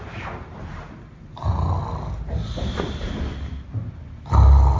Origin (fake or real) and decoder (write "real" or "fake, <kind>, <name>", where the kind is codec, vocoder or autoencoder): real